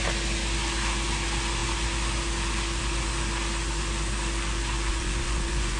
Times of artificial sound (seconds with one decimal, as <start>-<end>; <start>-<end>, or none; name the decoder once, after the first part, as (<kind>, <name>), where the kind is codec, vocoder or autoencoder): 4.9-5.8 (vocoder, Vocos)